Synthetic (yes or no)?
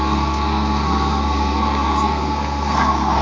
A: yes